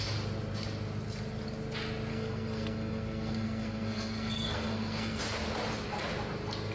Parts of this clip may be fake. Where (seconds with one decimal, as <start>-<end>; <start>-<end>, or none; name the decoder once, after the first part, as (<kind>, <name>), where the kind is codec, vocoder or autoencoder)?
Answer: 2.1-5.2 (codec, SNAC)